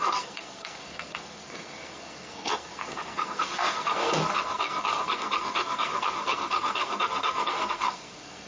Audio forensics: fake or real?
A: fake